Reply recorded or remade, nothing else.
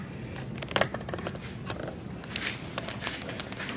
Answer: recorded